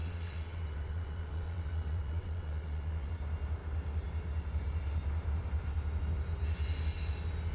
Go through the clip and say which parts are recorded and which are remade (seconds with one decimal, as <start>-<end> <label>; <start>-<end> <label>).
0.0-3.1 remade; 3.1-7.5 recorded